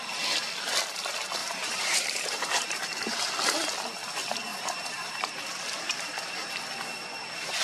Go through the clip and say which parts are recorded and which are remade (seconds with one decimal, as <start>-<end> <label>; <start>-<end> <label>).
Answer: 0.0-1.4 recorded; 1.4-3.3 remade; 3.3-4.5 recorded; 4.5-6.6 remade; 6.6-7.6 recorded

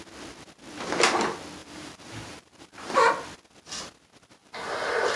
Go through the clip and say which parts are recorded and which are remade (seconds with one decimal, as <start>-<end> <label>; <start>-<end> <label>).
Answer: 0.0-1.6 recorded; 1.6-3.1 remade; 3.1-4.4 recorded; 4.4-5.2 remade